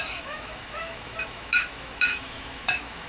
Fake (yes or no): yes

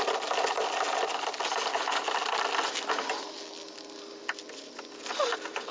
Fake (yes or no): no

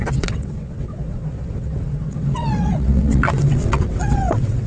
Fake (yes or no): yes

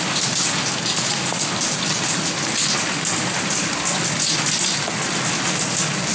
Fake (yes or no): no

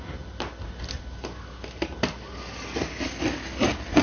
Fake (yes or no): no